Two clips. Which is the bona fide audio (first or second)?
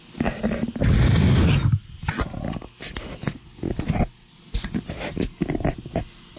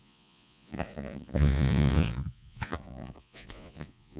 first